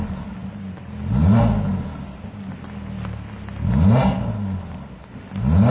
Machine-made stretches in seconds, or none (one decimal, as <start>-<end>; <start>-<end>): none